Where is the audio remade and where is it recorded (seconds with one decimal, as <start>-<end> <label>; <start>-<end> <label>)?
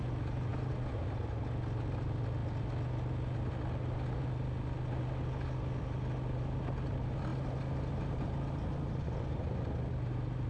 0.0-10.5 recorded